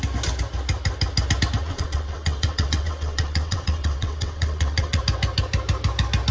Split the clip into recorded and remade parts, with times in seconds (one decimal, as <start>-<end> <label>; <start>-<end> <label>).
0.0-1.6 recorded; 1.6-5.0 remade; 5.0-6.3 recorded